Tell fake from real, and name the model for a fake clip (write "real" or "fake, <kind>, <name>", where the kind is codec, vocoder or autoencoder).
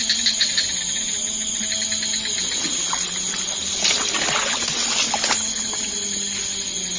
real